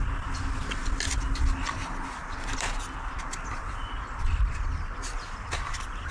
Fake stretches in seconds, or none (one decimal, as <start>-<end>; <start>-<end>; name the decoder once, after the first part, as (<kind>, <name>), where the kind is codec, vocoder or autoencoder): none